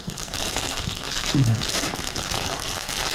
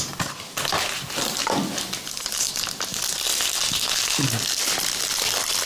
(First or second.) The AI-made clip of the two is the first